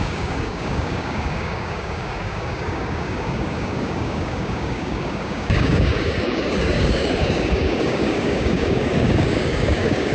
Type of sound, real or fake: fake